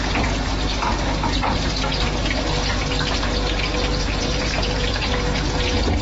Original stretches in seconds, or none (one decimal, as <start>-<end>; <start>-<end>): 0.0-3.9; 4.9-6.0